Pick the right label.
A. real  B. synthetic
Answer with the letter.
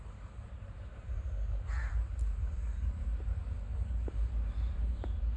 B